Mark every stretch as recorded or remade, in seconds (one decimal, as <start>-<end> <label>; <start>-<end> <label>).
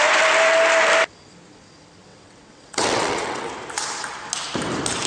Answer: 0.0-2.1 recorded; 2.1-3.5 remade; 3.5-5.1 recorded